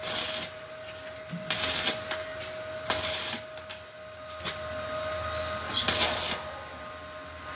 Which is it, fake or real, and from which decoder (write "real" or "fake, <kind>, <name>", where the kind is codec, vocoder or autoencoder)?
real